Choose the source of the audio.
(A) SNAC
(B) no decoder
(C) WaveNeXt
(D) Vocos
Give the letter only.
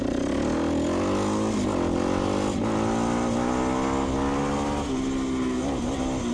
B